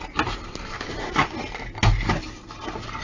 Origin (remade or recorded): recorded